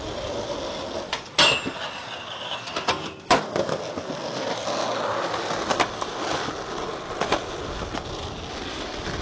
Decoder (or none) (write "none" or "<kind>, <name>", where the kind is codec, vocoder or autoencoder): none